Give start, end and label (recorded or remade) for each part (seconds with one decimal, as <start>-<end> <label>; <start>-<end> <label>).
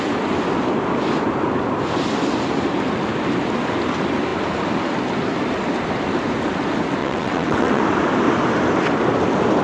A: 0.0-7.0 recorded; 7.0-7.8 remade; 7.8-9.6 recorded